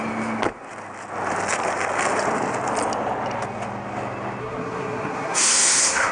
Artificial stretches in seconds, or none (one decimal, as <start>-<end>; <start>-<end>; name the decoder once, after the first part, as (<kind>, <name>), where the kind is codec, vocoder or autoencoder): 4.4-6.1 (codec, SNAC)